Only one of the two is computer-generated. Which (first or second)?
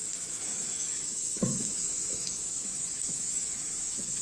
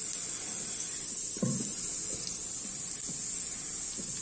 first